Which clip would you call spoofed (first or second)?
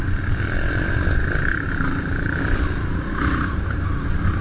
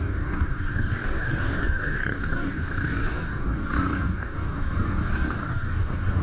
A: second